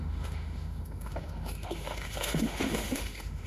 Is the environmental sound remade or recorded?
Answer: remade